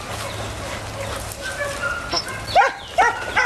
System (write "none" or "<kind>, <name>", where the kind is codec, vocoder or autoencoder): none